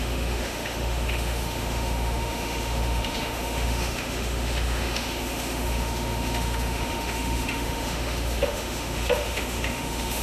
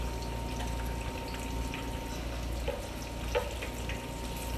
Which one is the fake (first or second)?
first